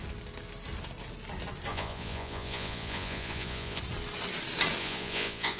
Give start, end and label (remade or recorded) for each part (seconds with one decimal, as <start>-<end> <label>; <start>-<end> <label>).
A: 0.0-1.7 recorded; 1.7-3.8 remade; 3.8-4.8 recorded; 4.8-5.6 remade